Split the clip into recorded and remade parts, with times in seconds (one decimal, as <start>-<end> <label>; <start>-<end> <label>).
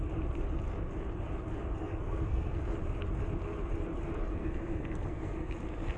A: 0.0-1.7 recorded; 1.7-2.6 remade; 2.6-4.3 recorded; 4.3-5.5 remade; 5.5-6.0 recorded